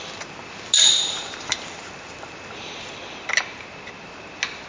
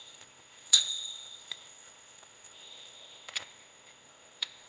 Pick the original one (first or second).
first